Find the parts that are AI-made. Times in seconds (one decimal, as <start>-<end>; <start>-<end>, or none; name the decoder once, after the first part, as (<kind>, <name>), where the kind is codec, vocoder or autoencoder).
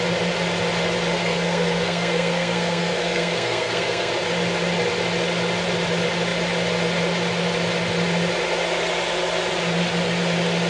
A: 1.2-4.1 (codec, SNAC)